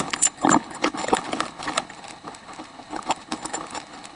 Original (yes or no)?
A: no